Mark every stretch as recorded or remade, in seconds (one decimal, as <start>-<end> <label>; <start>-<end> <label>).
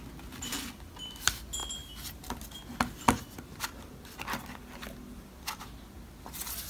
0.0-6.7 recorded